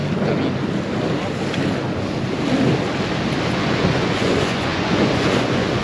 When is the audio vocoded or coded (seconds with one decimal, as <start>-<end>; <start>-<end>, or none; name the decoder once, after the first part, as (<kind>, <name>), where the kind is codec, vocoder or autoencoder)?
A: 3.5-5.8 (vocoder, Vocos)